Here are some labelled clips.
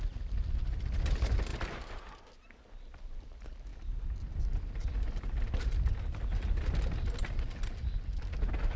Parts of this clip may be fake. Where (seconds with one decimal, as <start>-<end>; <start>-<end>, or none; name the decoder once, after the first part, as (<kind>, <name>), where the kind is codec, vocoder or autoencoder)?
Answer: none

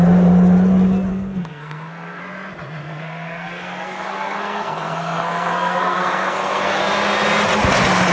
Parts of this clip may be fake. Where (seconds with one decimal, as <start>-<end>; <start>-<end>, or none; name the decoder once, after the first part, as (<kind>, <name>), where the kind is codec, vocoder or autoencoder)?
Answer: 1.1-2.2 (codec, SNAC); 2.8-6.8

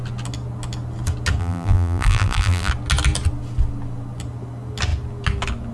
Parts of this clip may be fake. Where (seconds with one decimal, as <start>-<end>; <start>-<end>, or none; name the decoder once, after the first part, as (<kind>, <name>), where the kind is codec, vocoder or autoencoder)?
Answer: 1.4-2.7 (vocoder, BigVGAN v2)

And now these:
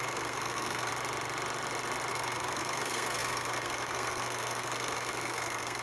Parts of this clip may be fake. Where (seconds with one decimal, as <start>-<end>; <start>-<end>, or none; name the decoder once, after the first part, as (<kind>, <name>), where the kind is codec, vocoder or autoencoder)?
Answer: 0.0-0.9 (codec, SNAC); 2.1-5.8

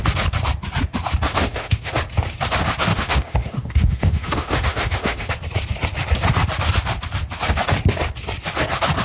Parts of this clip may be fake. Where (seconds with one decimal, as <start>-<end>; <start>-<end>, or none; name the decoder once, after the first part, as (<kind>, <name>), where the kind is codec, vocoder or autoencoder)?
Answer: 1.3-1.9 (autoencoder, DAC-VAE); 2.9-5.3